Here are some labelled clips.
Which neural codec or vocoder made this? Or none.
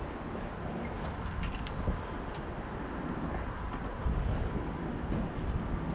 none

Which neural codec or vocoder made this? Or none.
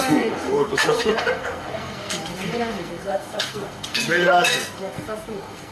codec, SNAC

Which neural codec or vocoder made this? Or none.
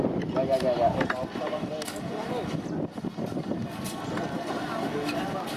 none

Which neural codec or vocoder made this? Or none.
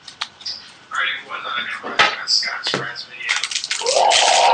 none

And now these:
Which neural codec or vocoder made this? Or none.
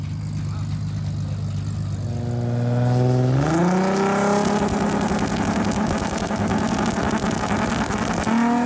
none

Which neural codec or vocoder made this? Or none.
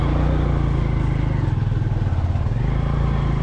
none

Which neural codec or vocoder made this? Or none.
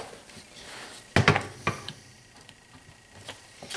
none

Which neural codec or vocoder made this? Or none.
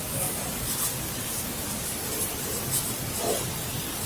none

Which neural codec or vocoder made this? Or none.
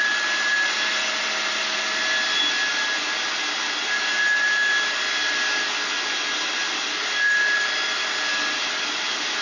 none